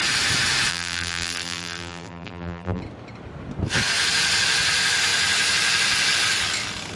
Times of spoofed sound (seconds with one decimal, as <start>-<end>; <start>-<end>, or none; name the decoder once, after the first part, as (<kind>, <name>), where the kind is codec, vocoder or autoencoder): 0.7-2.8 (vocoder, BigVGAN v2)